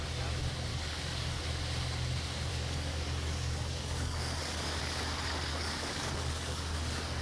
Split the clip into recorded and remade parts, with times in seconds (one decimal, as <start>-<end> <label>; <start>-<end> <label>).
0.0-0.7 recorded; 0.7-1.4 remade; 1.4-2.5 recorded; 2.5-4.8 remade; 4.8-5.5 recorded; 5.5-7.2 remade